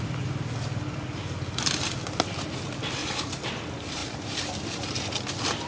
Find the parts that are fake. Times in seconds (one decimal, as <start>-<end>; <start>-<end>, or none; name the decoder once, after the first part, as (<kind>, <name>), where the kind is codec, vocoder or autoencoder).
3.0-3.5 (vocoder, BigVGAN v2); 4.0-4.9